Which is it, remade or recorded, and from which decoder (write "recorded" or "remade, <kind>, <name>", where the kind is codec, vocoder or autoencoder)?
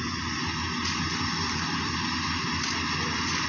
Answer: recorded